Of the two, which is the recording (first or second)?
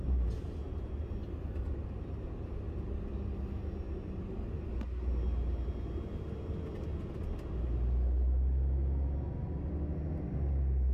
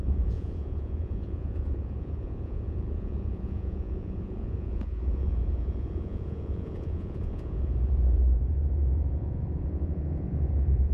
first